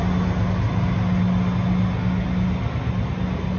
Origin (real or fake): real